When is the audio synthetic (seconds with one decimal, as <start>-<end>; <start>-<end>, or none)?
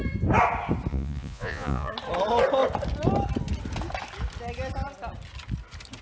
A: 0.9-1.9